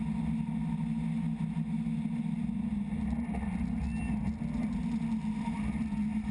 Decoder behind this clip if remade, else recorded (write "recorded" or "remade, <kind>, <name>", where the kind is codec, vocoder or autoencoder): recorded